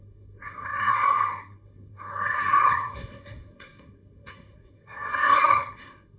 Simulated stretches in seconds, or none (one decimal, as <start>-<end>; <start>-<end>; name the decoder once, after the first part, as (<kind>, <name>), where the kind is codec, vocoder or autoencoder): 0.0-6.2 (codec, SNAC)